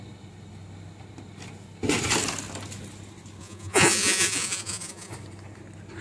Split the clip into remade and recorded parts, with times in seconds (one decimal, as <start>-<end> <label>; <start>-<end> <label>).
0.0-3.4 recorded; 3.4-5.1 remade; 5.1-6.0 recorded